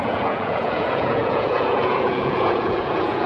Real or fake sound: fake